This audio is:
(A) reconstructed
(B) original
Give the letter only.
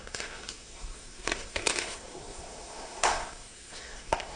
A